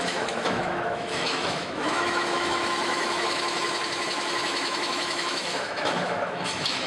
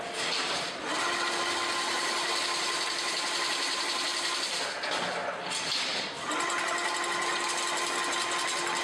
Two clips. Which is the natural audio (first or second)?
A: second